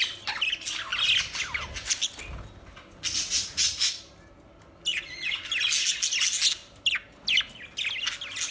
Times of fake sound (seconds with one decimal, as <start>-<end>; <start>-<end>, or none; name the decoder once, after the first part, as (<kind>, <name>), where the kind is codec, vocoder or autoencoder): 3.1-4.0 (vocoder, Vocos); 4.9-5.4